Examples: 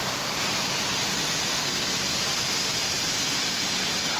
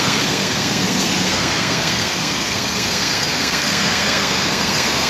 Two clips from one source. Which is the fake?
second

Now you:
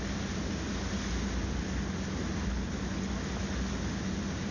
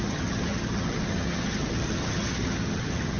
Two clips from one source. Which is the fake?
second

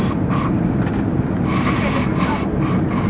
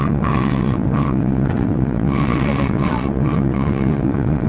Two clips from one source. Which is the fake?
second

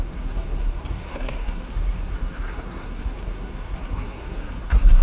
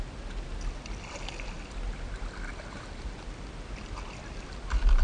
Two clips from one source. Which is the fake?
first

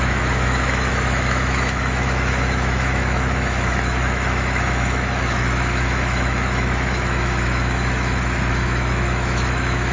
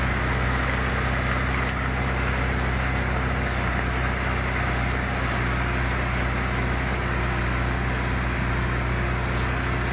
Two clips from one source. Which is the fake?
first